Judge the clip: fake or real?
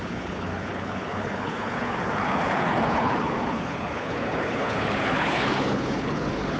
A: fake